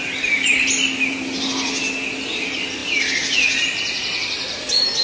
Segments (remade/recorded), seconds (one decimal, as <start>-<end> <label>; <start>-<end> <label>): 0.0-5.0 recorded